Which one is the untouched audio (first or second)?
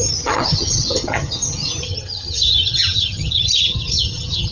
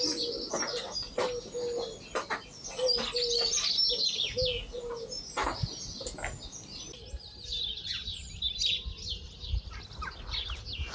second